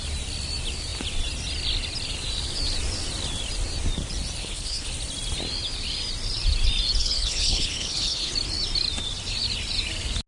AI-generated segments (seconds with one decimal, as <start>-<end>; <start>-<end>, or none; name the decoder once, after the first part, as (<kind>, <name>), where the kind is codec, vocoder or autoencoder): 4.4-4.9 (codec, HILCodec); 7.0-8.3

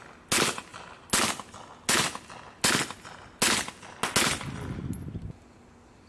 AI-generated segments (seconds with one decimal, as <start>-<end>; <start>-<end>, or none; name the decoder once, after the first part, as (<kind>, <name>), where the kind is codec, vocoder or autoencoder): none